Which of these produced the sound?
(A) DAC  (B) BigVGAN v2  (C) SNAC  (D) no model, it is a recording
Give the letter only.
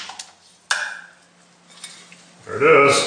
D